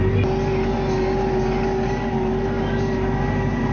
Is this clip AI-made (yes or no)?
no